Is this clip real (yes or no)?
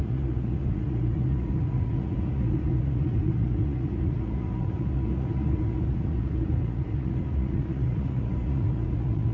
no